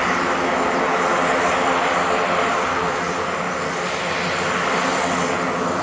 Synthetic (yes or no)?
no